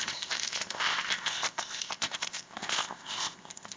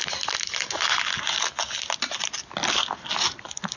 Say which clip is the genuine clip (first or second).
second